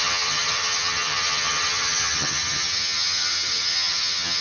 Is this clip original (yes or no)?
no